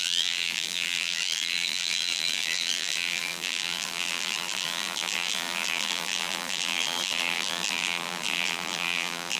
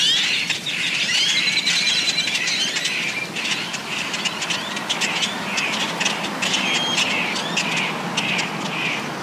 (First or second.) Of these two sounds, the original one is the second